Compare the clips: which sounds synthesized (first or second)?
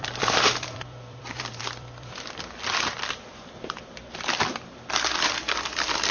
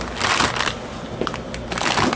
first